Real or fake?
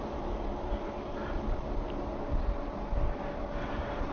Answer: real